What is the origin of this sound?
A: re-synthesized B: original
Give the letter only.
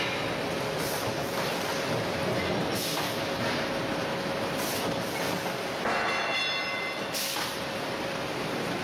B